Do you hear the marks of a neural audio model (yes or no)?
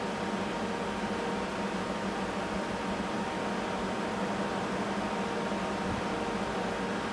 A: no